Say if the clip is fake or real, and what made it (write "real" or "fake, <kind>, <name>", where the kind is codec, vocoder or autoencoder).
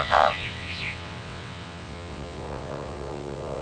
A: fake, vocoder, WaveNeXt